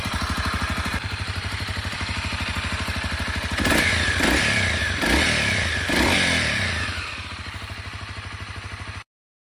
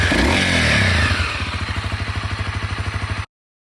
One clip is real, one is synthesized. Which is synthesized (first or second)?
first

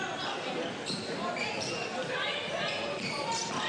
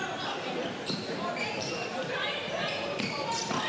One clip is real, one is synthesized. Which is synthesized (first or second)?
second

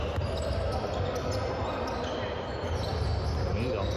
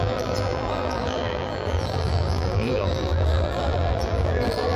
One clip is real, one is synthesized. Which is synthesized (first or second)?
second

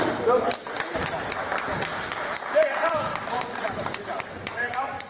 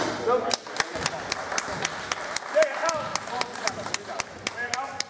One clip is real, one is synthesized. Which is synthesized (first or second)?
first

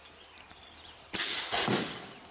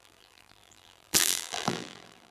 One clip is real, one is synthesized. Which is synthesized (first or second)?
second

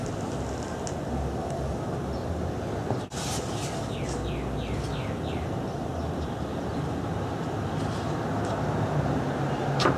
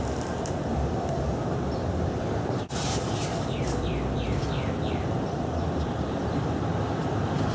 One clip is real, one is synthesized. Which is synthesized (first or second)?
second